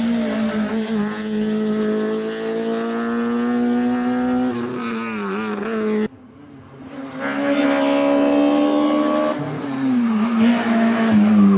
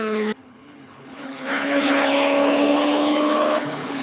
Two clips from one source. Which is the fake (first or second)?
second